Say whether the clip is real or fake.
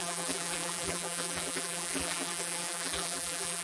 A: fake